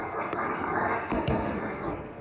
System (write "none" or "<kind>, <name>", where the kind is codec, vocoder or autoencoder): codec, SNAC